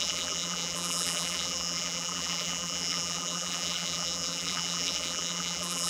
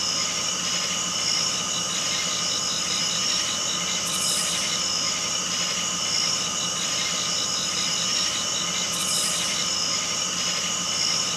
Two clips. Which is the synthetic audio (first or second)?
first